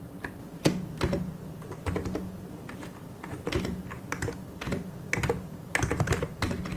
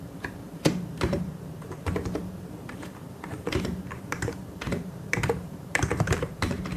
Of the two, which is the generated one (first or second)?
second